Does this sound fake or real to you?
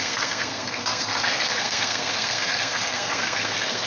fake